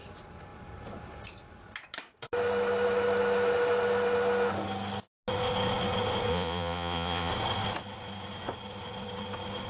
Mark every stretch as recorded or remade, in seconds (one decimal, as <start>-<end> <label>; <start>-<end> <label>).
0.0-6.3 recorded; 6.3-7.3 remade; 7.3-9.7 recorded